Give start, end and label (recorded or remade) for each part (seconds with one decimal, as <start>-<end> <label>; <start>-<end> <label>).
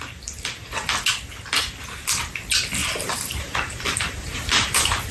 0.0-2.8 recorded; 2.8-5.1 remade